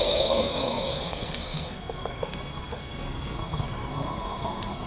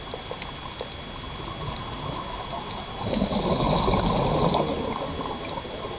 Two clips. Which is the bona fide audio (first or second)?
second